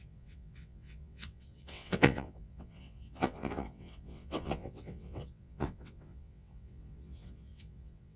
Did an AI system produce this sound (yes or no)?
yes